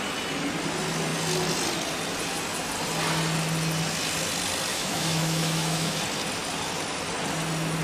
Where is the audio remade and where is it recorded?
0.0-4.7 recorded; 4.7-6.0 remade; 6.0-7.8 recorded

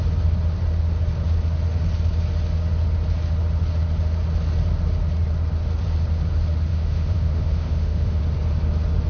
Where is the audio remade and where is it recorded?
0.0-6.7 recorded; 6.7-8.2 remade; 8.2-9.1 recorded

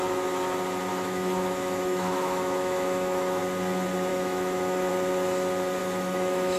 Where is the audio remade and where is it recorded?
0.0-0.9 recorded; 0.9-3.4 remade; 3.4-4.1 recorded; 4.1-4.9 remade; 4.9-5.8 recorded; 5.8-6.6 remade

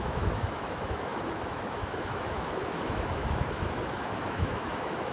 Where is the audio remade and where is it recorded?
0.0-5.1 remade

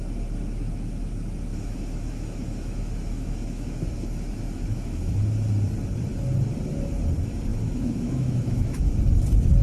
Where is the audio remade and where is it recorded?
0.0-1.5 recorded; 1.5-5.1 remade; 5.1-7.5 recorded; 7.5-8.9 remade; 8.9-9.6 recorded